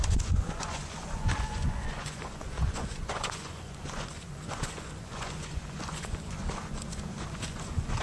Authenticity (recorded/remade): remade